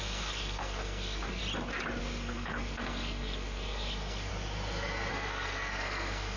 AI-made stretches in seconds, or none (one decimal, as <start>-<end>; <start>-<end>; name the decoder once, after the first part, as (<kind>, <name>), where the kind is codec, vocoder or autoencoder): 0.0-1.4 (codec, SNAC); 2.0-4.3; 5.1-6.4